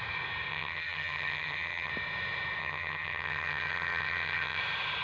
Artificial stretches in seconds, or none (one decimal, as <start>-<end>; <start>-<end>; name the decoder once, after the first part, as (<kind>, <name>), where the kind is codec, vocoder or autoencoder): 0.5-1.9 (vocoder, HiFi-GAN); 2.6-4.6